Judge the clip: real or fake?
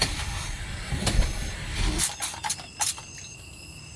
real